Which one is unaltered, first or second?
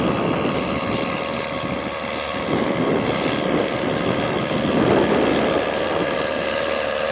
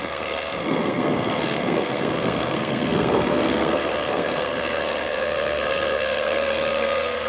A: first